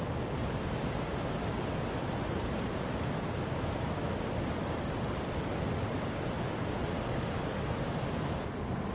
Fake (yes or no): no